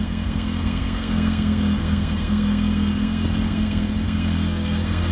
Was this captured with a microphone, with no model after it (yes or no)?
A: no